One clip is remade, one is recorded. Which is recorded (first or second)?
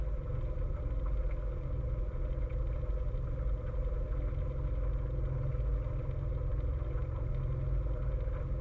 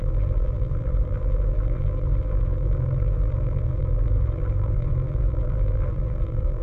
first